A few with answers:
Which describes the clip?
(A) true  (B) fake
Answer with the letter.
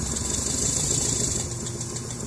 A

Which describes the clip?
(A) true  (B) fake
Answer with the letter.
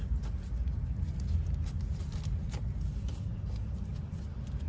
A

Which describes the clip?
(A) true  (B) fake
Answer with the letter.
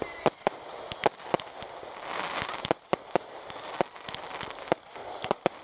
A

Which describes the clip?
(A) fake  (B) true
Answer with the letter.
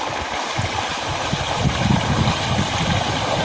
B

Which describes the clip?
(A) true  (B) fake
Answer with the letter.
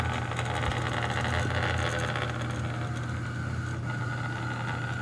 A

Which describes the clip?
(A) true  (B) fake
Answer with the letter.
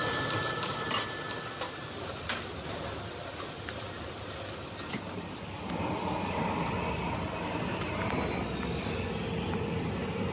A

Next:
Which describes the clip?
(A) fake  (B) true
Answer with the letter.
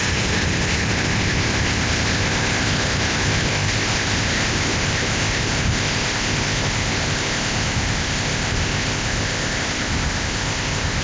A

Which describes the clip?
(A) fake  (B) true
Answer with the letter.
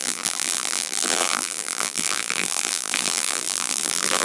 A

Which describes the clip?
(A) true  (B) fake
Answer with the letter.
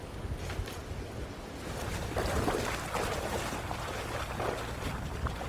A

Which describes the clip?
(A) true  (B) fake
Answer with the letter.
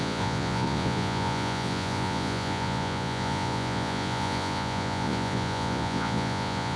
B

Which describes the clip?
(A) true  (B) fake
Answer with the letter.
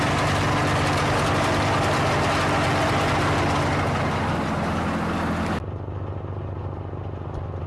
A